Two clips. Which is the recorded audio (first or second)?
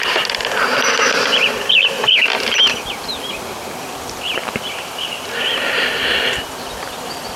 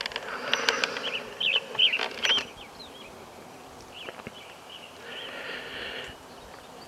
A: second